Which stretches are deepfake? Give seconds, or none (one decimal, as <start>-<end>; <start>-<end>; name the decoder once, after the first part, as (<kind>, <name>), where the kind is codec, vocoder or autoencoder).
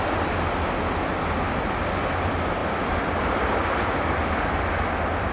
none